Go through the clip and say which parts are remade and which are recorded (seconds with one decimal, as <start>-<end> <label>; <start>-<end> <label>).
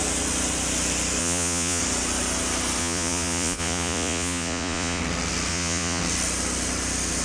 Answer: 0.0-1.2 recorded; 1.2-1.8 remade; 1.8-2.8 recorded; 2.8-5.0 remade; 5.0-5.5 recorded; 5.5-6.0 remade; 6.0-7.2 recorded